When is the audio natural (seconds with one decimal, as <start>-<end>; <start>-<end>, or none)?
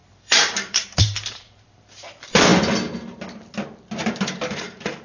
2.5-4.5